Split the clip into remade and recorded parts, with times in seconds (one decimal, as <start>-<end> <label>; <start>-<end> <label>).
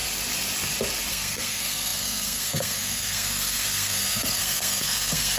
0.0-1.1 recorded; 1.1-5.4 remade